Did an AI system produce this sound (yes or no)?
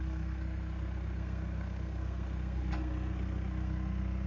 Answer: yes